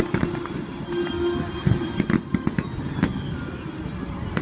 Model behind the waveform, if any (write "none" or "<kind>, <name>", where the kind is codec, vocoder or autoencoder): none